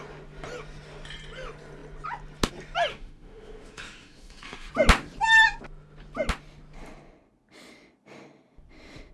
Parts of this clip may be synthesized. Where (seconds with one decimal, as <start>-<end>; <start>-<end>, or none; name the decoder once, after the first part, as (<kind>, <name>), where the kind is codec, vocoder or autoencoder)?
2.9-4.7 (autoencoder, DAC-VAE)